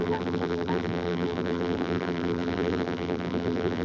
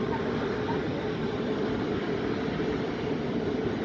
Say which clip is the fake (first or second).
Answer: first